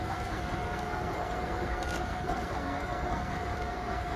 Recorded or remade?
remade